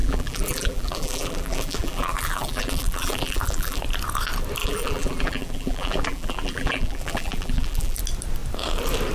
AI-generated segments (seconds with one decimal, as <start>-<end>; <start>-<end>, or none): 0.0-3.8; 4.6-8.0

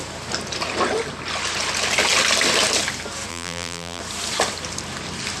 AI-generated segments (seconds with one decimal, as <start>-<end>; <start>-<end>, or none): 3.3-4.0

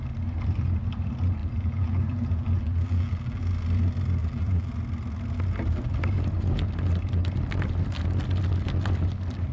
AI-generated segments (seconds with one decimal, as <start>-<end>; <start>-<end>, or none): 1.4-3.4; 4.2-4.7

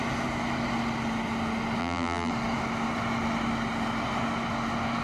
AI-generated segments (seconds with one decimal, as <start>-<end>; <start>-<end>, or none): 1.8-2.3

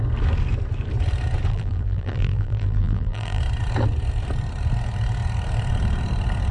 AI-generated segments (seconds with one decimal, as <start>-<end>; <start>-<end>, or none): 1.5-3.4

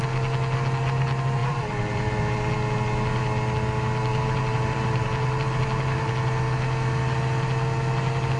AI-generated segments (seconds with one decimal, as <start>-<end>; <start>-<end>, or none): 1.4-2.2; 4.1-6.1

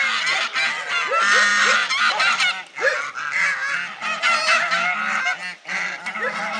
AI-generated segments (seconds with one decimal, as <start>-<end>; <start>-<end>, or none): none